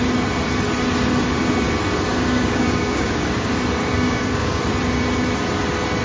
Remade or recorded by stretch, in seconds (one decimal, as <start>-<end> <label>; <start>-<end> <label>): 0.0-2.1 recorded; 2.1-3.5 remade; 3.5-3.9 recorded; 3.9-4.6 remade; 4.6-6.0 recorded